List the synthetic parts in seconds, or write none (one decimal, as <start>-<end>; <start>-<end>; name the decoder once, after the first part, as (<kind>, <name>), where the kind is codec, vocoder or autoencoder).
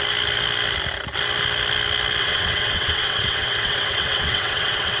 2.2-5.0 (vocoder, WaveNeXt)